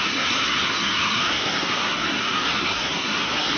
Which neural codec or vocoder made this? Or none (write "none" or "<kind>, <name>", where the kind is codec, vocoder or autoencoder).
codec, SNAC